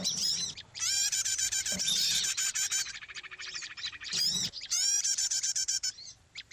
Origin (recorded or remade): remade